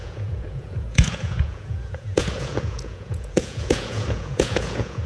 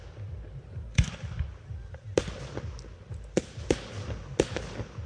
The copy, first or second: first